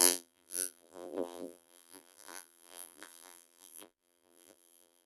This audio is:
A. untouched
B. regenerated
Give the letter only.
B